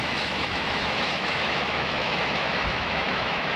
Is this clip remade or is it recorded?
remade